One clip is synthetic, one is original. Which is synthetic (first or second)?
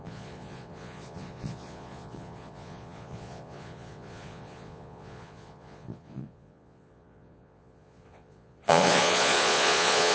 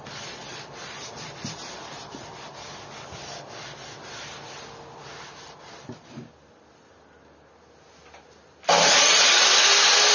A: first